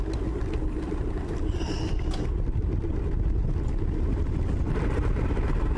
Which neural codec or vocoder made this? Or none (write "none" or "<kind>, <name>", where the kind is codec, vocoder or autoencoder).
none